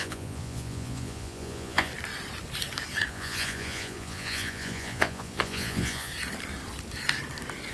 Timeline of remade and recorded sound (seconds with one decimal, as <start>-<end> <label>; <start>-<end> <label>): 0.0-1.9 remade; 1.9-3.1 recorded; 3.1-6.1 remade; 6.1-7.7 recorded